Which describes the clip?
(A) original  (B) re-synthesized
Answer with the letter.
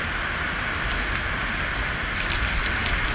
A